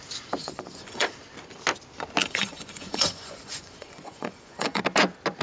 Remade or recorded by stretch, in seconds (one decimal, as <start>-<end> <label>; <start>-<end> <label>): 0.0-0.4 recorded; 0.4-1.1 remade; 1.1-2.2 recorded; 2.2-4.8 remade; 4.8-5.4 recorded